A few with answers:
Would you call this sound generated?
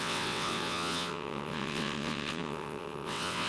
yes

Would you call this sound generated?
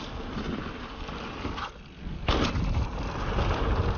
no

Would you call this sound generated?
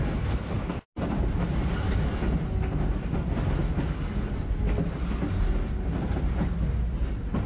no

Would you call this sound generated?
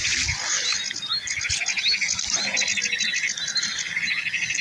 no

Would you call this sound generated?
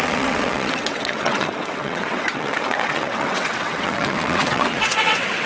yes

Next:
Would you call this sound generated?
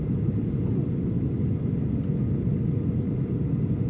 no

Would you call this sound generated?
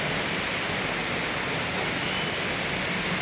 no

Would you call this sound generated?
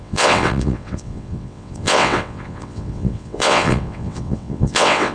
yes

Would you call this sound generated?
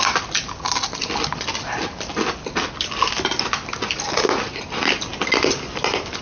no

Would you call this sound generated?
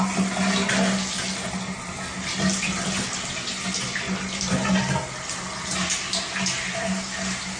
no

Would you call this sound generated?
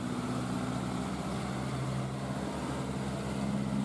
no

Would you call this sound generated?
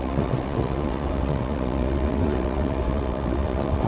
yes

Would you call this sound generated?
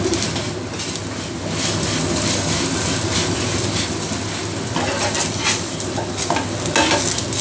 no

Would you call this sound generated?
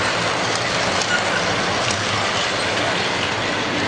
no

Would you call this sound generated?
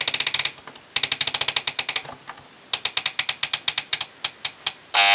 no